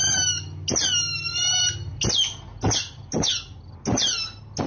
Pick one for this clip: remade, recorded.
recorded